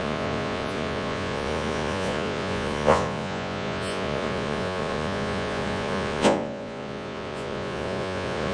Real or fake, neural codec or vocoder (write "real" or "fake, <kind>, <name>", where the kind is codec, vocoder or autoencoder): fake, vocoder, Vocos